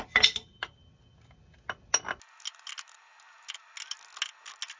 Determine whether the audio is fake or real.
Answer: real